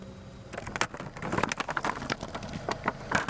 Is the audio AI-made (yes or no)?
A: no